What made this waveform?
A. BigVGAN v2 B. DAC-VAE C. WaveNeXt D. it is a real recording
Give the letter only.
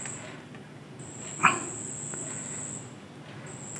D